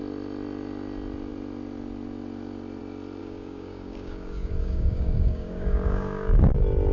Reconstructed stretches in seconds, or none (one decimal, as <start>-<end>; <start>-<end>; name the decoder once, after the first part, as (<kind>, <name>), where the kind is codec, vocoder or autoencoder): 3.2-6.4 (codec, DAC)